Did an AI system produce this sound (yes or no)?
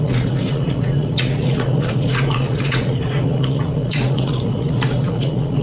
yes